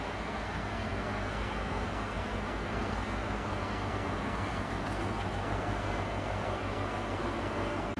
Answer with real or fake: fake